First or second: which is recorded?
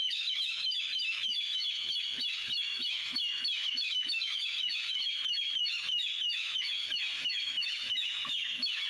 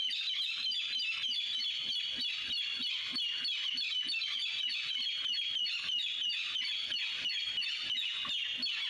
second